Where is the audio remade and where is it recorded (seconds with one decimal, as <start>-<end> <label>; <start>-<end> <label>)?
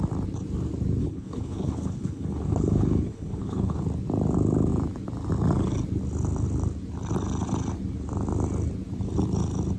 0.0-1.0 recorded; 1.0-3.8 remade; 3.8-9.8 recorded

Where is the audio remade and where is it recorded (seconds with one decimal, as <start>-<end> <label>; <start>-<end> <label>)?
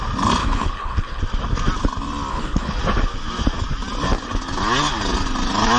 0.0-0.4 recorded; 0.4-1.2 remade; 1.2-2.3 recorded; 2.3-2.8 remade; 2.8-5.8 recorded